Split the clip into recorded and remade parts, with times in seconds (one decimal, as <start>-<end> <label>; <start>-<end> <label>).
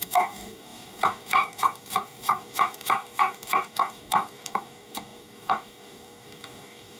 0.0-7.0 remade